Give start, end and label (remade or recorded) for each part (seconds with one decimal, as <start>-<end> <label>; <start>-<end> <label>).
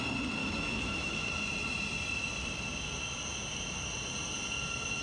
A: 0.0-0.4 recorded; 0.4-1.3 remade; 1.3-5.0 recorded